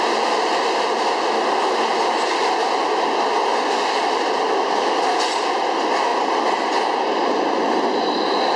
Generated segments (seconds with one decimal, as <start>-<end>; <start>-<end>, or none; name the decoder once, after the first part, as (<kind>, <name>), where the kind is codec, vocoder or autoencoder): none